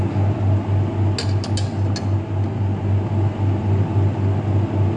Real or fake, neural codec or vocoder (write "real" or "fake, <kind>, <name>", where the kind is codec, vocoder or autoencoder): real